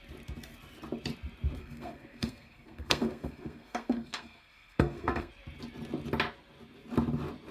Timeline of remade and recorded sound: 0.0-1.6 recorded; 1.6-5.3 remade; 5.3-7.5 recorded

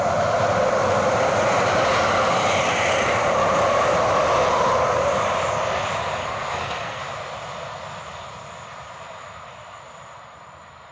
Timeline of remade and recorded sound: 0.0-6.2 recorded; 6.2-7.0 remade; 7.0-10.9 recorded

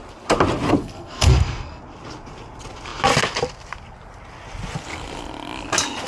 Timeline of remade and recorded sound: 0.0-0.8 recorded; 0.8-1.8 remade; 1.8-6.1 recorded

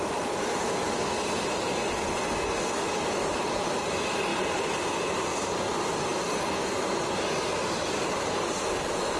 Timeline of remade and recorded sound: 0.0-9.2 recorded

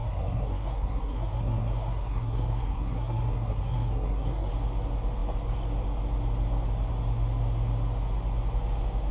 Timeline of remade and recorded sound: 0.0-4.5 remade; 4.5-9.1 recorded

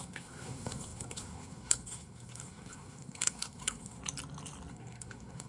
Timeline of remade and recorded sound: 0.0-4.0 remade; 4.0-4.7 recorded; 4.7-5.5 remade

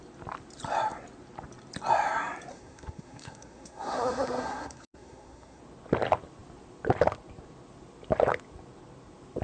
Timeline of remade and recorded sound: 0.0-2.5 recorded; 2.5-5.6 remade; 5.6-9.4 recorded